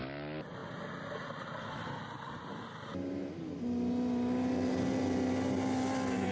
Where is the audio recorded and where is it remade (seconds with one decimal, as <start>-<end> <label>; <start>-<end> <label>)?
0.0-6.3 recorded